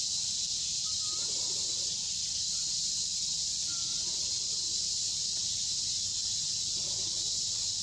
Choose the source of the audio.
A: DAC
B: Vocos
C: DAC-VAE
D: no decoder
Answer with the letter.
D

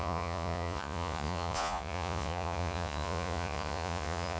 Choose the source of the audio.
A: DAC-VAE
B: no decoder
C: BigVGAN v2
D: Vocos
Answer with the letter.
D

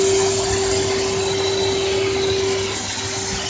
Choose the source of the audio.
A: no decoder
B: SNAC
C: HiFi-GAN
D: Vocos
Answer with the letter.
A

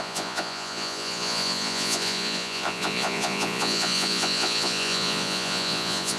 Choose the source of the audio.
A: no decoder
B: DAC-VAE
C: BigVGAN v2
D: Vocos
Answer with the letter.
D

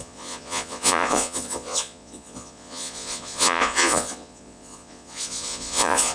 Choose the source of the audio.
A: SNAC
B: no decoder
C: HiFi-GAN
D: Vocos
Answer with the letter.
D